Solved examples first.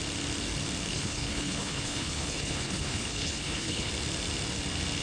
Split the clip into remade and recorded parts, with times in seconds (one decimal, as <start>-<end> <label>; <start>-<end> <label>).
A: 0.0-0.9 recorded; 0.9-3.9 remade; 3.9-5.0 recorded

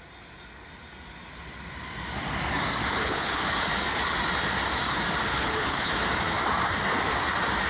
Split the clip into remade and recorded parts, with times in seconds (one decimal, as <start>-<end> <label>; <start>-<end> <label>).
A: 0.0-2.8 recorded; 2.8-3.4 remade; 3.4-5.3 recorded; 5.3-5.9 remade; 5.9-7.7 recorded

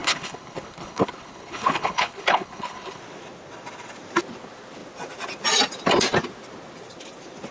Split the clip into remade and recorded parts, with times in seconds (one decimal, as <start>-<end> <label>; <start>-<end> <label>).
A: 0.0-3.0 remade; 3.0-7.5 recorded

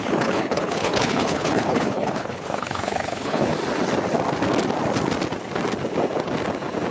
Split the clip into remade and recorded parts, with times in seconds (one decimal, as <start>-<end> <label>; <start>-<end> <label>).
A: 0.0-3.5 remade; 3.5-6.9 recorded

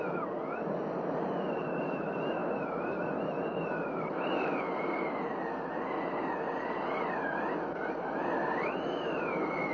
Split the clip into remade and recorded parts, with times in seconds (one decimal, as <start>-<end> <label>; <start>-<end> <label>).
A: 0.0-9.7 recorded

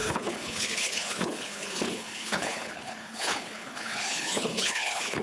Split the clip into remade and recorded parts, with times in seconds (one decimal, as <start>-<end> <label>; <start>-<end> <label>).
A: 0.0-5.2 remade